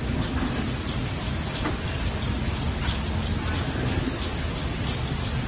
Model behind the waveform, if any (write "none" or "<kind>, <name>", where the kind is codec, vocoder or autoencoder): none